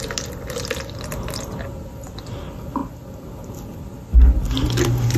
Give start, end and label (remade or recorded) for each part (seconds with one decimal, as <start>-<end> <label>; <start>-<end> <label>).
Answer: 0.0-5.2 recorded